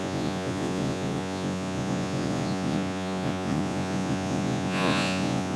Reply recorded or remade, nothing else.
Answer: remade